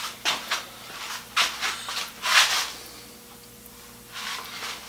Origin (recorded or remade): recorded